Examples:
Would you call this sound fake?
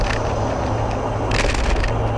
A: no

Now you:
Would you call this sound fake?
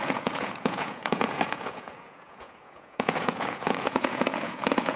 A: yes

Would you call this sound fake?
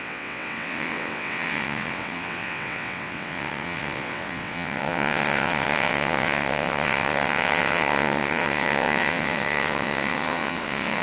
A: yes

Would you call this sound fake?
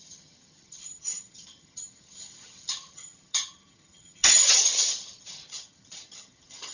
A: yes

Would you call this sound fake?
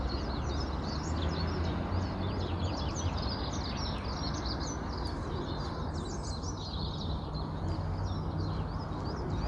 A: no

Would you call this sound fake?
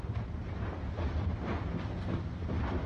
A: no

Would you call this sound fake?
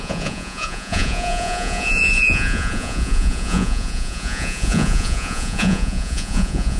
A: yes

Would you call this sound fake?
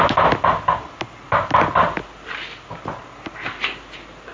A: no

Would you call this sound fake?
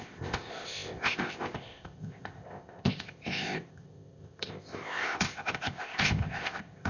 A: yes